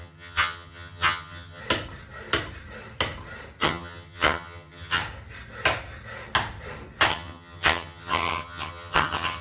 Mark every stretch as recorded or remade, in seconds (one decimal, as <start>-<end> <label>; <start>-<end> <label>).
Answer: 0.0-1.6 remade; 1.6-3.6 recorded; 3.6-5.0 remade; 5.0-7.1 recorded; 7.1-9.4 remade

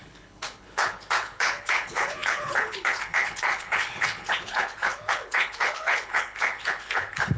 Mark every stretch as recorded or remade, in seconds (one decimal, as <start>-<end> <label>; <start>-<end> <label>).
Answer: 0.0-7.4 remade

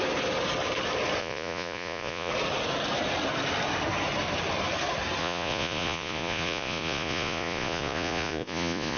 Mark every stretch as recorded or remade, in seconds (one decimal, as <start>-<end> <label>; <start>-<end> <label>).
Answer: 0.0-1.2 recorded; 1.2-2.3 remade; 2.3-5.2 recorded; 5.2-9.0 remade

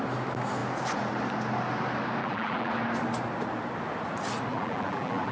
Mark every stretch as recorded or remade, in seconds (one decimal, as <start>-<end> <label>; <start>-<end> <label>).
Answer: 0.0-2.2 recorded; 2.2-2.7 remade; 2.7-4.5 recorded; 4.5-5.3 remade

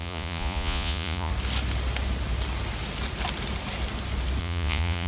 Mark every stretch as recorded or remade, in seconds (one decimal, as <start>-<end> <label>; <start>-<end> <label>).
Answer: 0.0-1.3 remade; 1.3-4.4 recorded; 4.4-5.1 remade

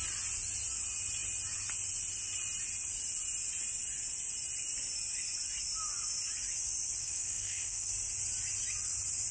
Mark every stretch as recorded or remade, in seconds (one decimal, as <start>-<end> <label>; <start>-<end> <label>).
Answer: 0.0-7.0 recorded; 7.0-7.9 remade; 7.9-9.3 recorded

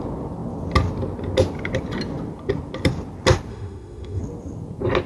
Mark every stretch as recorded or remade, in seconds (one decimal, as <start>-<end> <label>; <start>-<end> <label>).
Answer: 0.0-3.5 recorded; 3.5-4.2 remade; 4.2-5.1 recorded

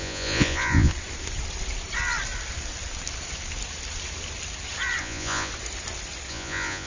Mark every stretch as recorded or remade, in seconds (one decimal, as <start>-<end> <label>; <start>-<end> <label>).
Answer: 0.0-0.9 remade; 0.9-5.0 recorded; 5.0-5.5 remade; 5.5-6.3 recorded; 6.3-6.9 remade